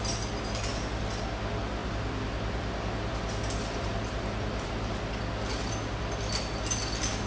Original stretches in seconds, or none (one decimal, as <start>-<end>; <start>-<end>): 0.0-1.8; 4.7-7.3